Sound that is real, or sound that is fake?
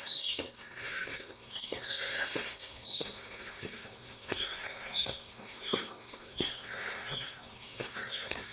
fake